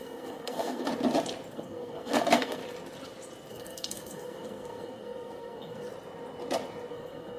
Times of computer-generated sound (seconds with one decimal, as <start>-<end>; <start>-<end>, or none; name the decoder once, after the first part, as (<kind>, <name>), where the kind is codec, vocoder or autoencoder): 0.0-0.9 (codec, SNAC); 1.5-2.6; 3.5-5.9; 6.9-7.4